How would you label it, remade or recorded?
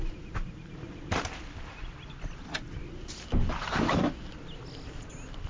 recorded